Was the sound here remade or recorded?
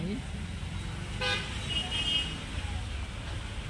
recorded